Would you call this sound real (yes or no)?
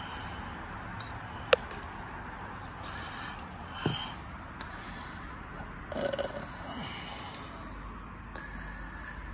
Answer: yes